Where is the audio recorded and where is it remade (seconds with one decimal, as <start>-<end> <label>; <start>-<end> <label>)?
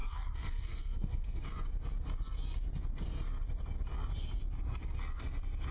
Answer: 0.0-1.4 remade; 1.4-5.7 recorded